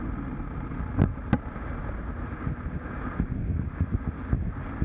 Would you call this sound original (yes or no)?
yes